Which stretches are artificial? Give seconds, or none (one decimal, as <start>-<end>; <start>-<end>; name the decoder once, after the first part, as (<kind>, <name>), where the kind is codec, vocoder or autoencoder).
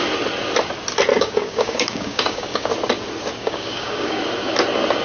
1.1-2.7 (codec, DAC); 3.4-4.2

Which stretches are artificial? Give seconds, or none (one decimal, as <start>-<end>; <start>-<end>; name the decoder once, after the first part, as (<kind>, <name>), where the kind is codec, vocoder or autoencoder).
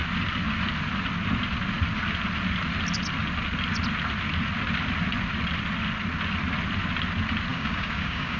7.5-8.4 (codec, DAC)